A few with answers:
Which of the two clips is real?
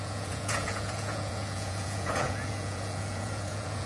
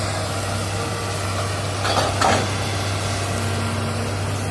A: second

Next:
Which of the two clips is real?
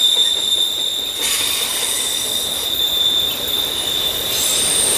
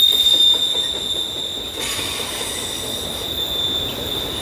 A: second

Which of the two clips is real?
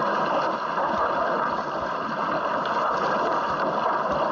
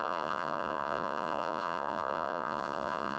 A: first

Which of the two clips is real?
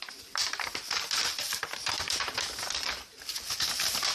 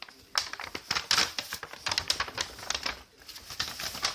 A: second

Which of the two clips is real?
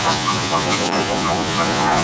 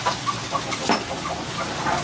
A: second